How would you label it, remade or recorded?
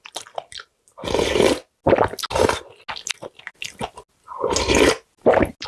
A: recorded